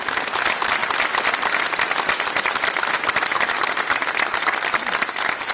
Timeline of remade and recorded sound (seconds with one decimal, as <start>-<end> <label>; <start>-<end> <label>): 0.0-5.5 recorded

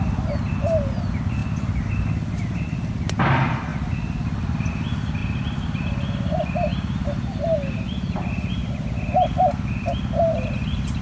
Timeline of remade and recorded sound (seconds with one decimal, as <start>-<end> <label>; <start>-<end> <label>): 0.0-11.0 recorded

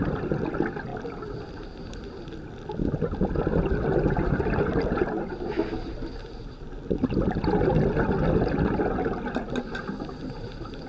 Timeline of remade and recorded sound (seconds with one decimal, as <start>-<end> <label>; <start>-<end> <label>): 0.0-10.9 recorded

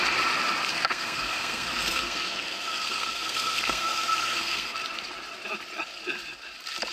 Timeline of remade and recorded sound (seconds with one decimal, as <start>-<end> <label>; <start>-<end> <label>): 0.0-0.7 recorded; 0.7-4.8 remade; 4.8-6.9 recorded

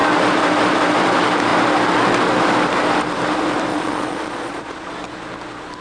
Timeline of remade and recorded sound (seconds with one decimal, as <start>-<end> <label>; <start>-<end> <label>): 0.0-3.7 recorded; 3.7-4.9 remade; 4.9-5.8 recorded

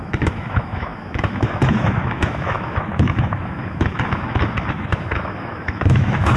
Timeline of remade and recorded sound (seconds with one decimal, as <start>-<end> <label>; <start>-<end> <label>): 0.0-6.4 remade